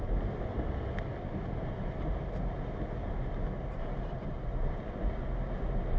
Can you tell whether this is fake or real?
real